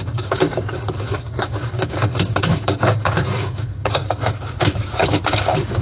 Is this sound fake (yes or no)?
yes